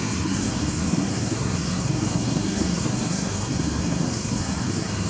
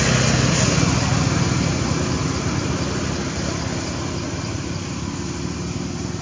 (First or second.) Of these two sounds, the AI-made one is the first